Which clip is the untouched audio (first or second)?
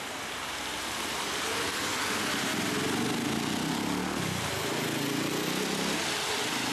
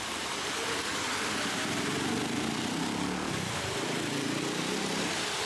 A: first